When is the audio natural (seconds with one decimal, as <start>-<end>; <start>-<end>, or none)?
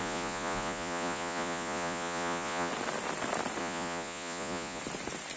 2.7-3.6; 4.8-5.4